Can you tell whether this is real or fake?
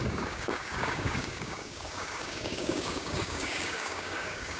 fake